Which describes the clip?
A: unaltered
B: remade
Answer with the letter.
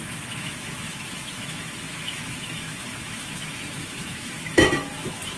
B